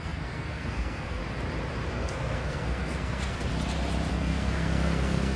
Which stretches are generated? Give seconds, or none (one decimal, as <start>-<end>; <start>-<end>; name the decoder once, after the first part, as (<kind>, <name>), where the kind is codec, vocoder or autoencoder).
0.0-1.2 (codec, SNAC); 1.9-3.5; 4.1-5.4